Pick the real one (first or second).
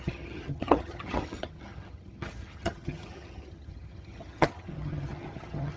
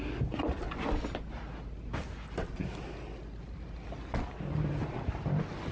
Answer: second